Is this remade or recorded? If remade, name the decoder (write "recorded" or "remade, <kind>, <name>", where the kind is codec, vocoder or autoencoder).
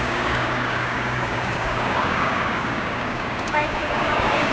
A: remade, codec, DAC